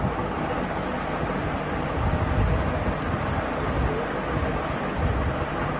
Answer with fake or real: real